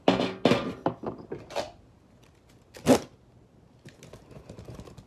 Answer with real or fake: real